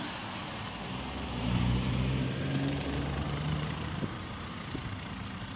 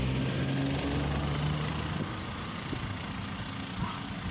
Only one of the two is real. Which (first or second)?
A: second